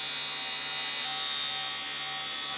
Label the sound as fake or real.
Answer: real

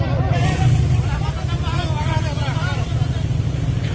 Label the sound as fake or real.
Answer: real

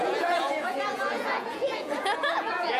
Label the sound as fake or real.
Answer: fake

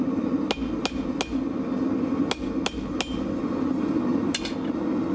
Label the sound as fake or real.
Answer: real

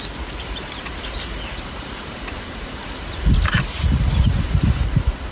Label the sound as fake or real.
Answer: real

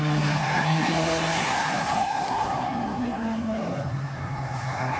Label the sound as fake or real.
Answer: fake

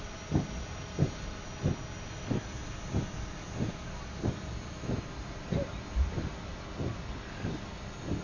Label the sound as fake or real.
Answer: real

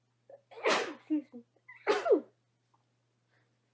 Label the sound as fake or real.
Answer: real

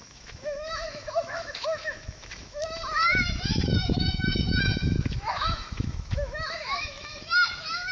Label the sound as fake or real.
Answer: fake